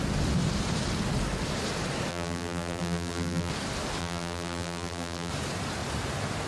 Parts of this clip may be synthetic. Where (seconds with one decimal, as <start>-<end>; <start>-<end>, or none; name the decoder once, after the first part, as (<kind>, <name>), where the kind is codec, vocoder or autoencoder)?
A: 2.1-3.5 (vocoder, BigVGAN v2); 4.0-5.3